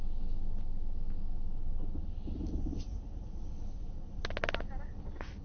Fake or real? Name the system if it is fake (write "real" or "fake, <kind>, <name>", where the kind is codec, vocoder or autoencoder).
real